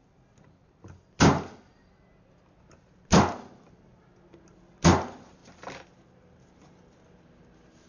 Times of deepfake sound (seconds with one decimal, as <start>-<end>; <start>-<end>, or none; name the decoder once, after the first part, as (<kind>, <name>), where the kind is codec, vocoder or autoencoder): none